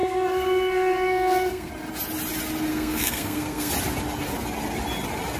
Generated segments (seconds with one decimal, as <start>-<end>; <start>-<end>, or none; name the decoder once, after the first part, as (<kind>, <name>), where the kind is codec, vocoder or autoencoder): 0.0-1.7 (codec, SNAC); 2.7-3.7